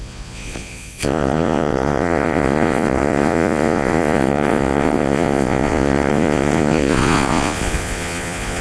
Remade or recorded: remade